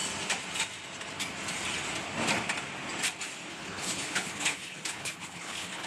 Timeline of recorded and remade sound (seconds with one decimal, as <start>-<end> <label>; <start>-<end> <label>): 0.0-3.5 recorded; 3.5-5.9 remade